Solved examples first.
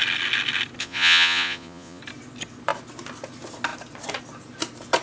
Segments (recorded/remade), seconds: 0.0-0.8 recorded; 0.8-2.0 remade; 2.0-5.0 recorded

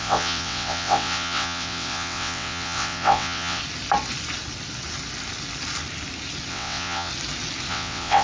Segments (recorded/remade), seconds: 0.0-3.6 remade; 3.6-6.5 recorded; 6.5-7.1 remade; 7.1-7.7 recorded; 7.7-8.2 remade

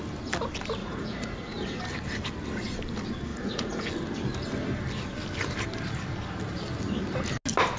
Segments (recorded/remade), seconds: 0.0-0.8 recorded; 0.8-1.8 remade; 1.8-3.3 recorded; 3.3-3.9 remade; 3.9-7.8 recorded

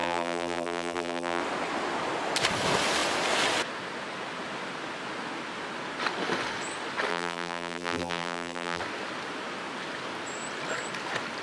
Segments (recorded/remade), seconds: 0.0-1.4 remade; 1.4-7.1 recorded; 7.1-8.8 remade; 8.8-11.4 recorded

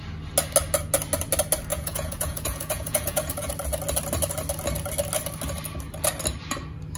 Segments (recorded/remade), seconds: 0.0-1.7 recorded; 1.7-3.5 remade; 3.5-7.0 recorded

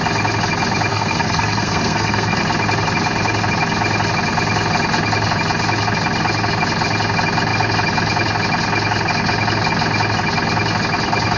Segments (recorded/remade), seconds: 0.0-0.9 recorded; 0.9-2.4 remade; 2.4-11.4 recorded

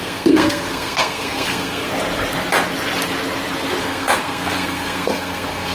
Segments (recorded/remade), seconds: 0.0-1.9 remade; 1.9-3.8 recorded; 3.8-5.7 remade

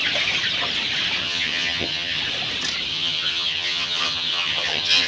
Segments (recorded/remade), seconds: 0.0-1.2 recorded; 1.2-2.2 remade; 2.2-2.9 recorded; 2.9-5.1 remade